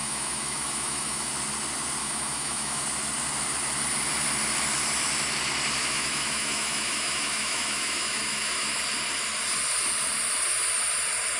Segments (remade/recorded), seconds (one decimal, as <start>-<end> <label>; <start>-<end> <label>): 0.0-1.3 remade; 1.3-2.0 recorded; 2.0-2.8 remade; 2.8-5.8 recorded; 5.8-8.8 remade; 8.8-11.4 recorded